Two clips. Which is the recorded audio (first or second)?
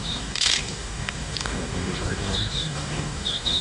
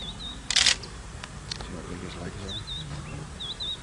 second